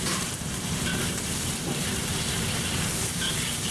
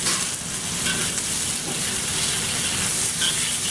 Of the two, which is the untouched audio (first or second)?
second